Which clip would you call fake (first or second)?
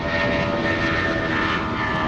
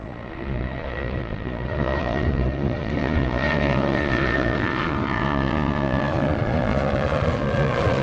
second